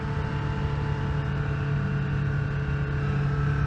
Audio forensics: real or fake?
real